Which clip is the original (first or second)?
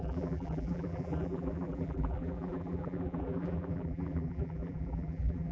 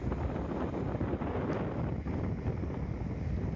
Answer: second